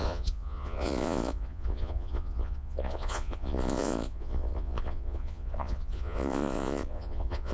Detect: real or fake fake